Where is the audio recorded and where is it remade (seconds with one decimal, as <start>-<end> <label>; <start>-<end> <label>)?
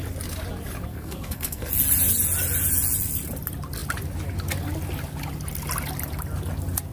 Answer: 0.0-0.9 recorded; 0.9-1.7 remade; 1.7-6.9 recorded